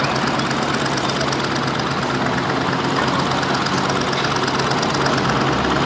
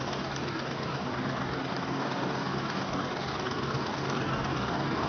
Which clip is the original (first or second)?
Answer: first